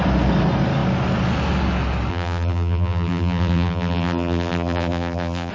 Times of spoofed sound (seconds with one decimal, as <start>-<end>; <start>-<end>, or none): 2.1-5.5